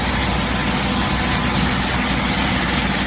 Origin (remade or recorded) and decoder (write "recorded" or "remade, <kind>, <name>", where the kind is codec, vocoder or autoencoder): recorded